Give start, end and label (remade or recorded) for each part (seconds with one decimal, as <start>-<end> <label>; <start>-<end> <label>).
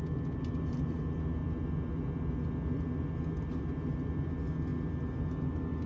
0.0-5.9 recorded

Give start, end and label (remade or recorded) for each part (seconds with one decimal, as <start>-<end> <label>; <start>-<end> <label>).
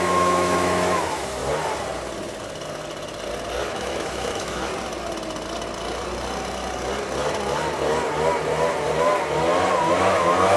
0.0-1.4 remade; 1.4-3.7 recorded; 3.7-4.7 remade; 4.7-9.9 recorded; 9.9-10.6 remade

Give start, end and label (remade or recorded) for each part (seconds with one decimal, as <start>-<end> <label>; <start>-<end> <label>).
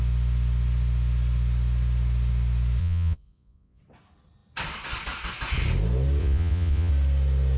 0.0-2.8 recorded; 2.8-3.8 remade; 3.8-6.2 recorded; 6.2-6.9 remade; 6.9-7.6 recorded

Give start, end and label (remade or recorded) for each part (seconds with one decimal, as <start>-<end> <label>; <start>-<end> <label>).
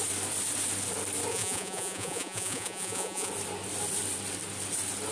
0.0-1.3 recorded; 1.3-3.3 remade; 3.3-5.1 recorded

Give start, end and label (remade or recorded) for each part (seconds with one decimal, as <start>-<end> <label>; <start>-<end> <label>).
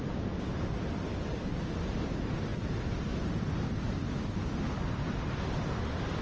0.0-6.2 recorded